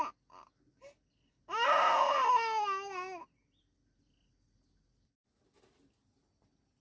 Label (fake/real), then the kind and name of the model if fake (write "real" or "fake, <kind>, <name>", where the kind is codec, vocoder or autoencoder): real